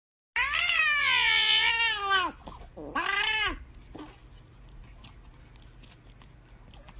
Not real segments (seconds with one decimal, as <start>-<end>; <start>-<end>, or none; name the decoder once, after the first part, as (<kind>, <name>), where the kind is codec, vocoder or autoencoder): 1.0-1.7 (vocoder, Vocos)